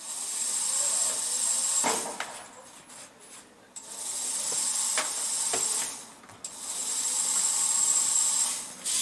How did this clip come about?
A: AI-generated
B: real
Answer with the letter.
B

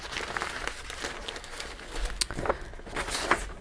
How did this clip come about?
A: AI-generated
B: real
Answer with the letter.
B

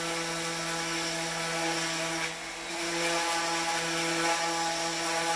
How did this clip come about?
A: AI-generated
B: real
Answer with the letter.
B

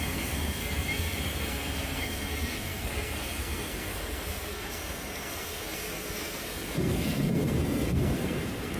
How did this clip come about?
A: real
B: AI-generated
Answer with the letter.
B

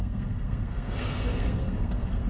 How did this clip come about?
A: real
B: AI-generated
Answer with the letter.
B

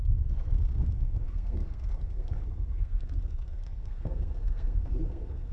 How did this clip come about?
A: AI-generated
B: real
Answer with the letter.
A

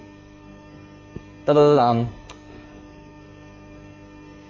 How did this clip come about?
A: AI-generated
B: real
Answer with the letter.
A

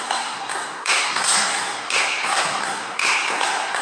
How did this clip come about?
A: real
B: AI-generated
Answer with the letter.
B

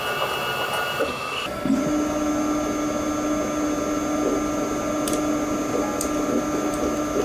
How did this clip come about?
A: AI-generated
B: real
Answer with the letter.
B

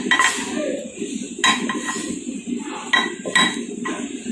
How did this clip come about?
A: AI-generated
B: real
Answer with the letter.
B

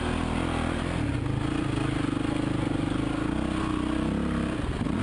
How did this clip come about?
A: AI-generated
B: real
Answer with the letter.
B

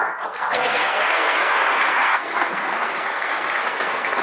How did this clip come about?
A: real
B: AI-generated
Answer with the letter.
B